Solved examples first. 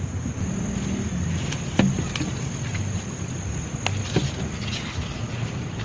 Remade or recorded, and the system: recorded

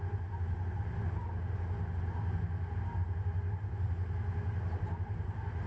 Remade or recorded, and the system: recorded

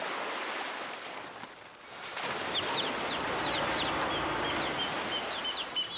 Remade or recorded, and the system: recorded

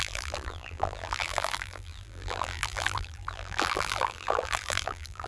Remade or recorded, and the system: remade, vocoder, BigVGAN v2